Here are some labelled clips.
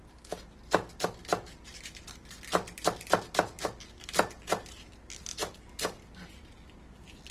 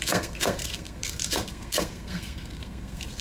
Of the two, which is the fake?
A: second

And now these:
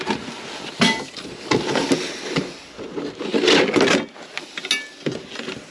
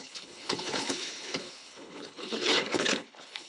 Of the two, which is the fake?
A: second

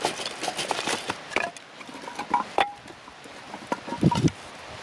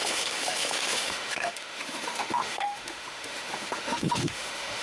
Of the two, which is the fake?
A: second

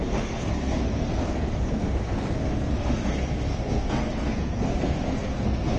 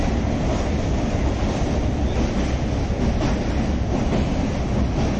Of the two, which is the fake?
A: first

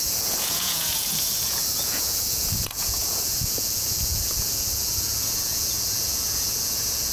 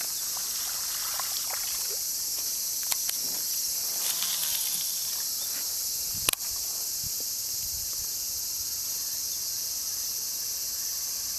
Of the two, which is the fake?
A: first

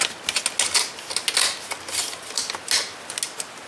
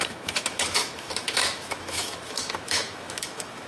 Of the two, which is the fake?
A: second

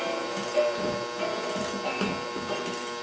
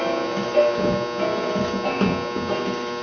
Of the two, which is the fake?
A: first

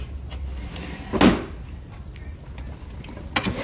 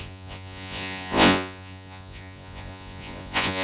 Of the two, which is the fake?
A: second